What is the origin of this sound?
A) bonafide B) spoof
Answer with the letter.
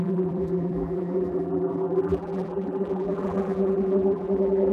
B